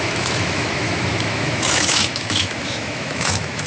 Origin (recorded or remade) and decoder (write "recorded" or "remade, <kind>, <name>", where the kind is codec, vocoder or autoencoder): remade, autoencoder, DAC-VAE